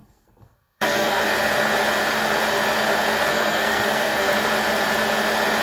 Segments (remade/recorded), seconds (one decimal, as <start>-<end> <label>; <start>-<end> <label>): 0.0-1.2 remade; 1.2-3.3 recorded; 3.3-4.3 remade; 4.3-5.6 recorded